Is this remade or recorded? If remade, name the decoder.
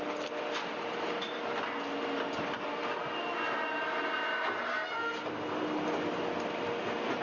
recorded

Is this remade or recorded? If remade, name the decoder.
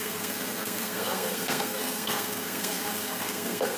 remade, codec, SNAC